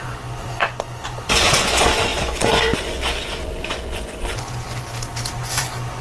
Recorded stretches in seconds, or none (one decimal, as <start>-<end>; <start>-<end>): 4.9-5.4